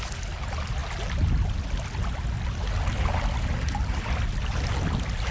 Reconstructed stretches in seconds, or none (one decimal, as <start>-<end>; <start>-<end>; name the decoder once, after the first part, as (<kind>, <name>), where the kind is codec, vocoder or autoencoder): none

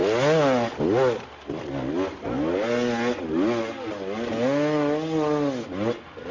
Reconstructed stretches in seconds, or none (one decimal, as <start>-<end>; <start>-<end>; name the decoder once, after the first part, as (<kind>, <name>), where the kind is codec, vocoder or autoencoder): none

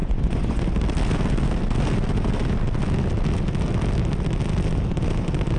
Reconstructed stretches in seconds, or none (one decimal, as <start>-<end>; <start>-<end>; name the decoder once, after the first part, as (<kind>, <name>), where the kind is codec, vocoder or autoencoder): 0.0-0.6 (vocoder, Vocos)

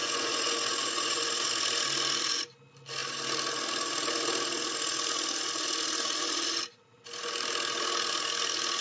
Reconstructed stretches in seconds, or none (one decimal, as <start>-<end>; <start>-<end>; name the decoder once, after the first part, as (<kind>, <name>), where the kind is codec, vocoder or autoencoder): 0.0-1.5 (vocoder, Vocos)

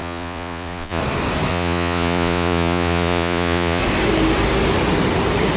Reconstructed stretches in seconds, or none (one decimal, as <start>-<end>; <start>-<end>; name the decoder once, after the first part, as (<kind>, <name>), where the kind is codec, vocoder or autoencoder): 0.0-1.0 (vocoder, Vocos); 1.5-3.8

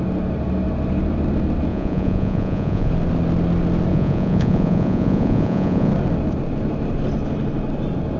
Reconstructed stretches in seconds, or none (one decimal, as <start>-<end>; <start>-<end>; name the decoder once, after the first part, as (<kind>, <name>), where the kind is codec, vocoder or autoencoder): 1.7-2.9 (vocoder, Vocos); 3.9-5.9